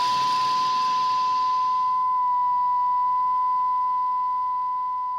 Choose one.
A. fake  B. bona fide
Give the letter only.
B